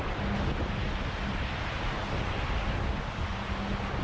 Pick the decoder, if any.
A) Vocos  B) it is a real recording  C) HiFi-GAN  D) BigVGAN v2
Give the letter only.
B